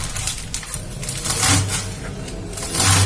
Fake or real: real